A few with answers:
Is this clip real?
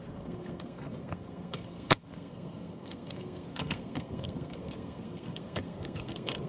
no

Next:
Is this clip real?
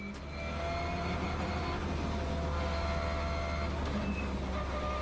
yes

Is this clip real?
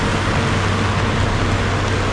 yes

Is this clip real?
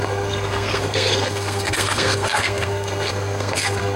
no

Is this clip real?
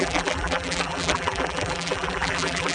no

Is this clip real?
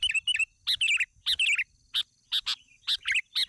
yes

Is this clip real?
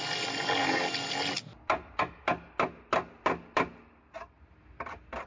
yes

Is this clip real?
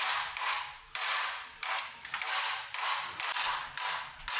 yes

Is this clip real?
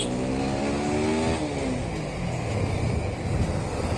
yes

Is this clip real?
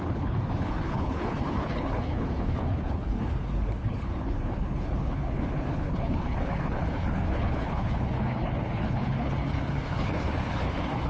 no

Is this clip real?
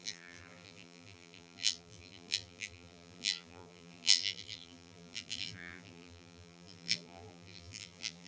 no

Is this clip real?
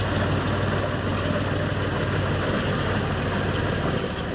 yes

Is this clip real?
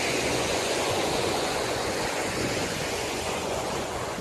no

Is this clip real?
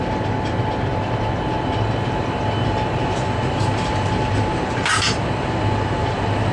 no